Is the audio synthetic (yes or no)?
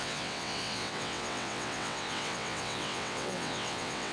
yes